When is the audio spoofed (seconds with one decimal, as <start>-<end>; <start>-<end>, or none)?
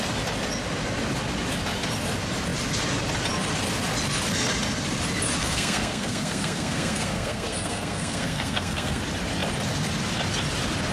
5.4-9.0